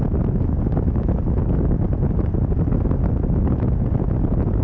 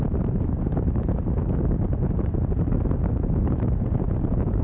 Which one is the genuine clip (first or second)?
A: first